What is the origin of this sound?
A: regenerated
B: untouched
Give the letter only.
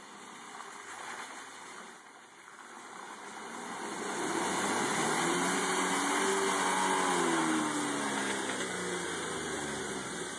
B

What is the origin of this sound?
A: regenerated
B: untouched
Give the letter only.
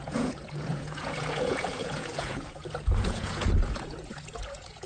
A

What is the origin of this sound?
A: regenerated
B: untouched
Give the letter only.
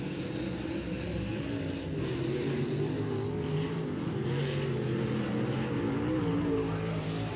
B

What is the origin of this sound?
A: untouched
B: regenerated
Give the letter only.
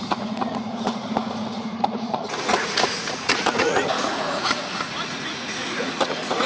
B